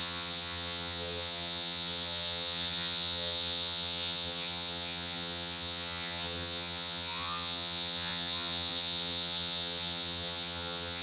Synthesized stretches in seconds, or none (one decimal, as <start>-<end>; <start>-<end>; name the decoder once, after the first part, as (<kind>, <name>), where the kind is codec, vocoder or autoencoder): 0.0-11.0 (vocoder, HiFi-GAN)